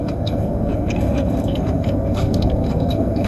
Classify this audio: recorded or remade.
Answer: remade